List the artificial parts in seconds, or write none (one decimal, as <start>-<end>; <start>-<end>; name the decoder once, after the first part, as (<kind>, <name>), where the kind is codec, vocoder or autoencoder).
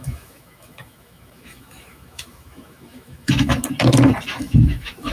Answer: 0.0-3.6 (autoencoder, DAC-VAE); 4.4-5.1